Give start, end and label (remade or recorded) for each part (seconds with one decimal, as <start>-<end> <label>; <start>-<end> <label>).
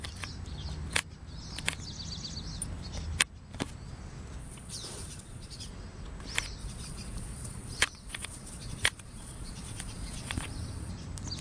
0.0-4.4 recorded; 4.4-5.7 remade; 5.7-6.6 recorded; 6.6-10.9 remade; 10.9-11.4 recorded